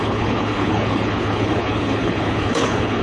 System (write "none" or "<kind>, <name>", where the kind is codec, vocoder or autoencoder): codec, HILCodec